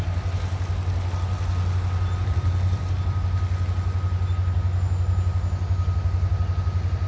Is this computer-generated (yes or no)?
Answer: no